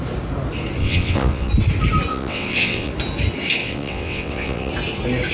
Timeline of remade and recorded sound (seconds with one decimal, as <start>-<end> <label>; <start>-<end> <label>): 0.0-0.8 recorded; 0.8-1.5 remade; 1.5-2.1 recorded; 2.1-2.9 remade; 2.9-3.6 recorded; 3.6-4.7 remade; 4.7-5.3 recorded